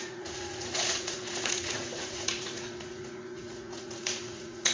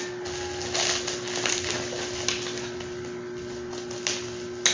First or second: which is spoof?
first